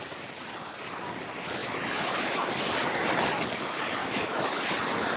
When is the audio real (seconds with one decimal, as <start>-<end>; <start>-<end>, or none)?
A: 0.0-1.6; 2.5-4.0; 4.6-5.2